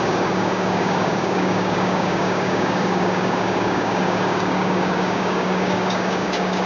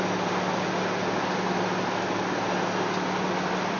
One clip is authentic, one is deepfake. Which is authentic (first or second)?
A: second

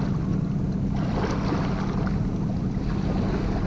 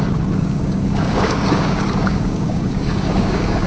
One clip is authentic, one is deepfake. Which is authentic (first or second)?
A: first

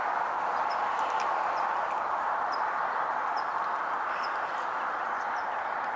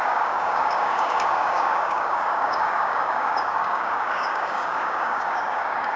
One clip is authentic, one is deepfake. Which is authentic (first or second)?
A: first